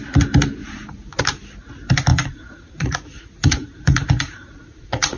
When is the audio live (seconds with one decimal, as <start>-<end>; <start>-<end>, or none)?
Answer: 0.0-0.6; 1.2-2.1